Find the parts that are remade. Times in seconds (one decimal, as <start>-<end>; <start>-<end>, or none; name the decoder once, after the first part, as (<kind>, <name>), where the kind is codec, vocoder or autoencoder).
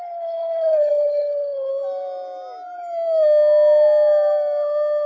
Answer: 0.0-1.7 (codec, HILCodec)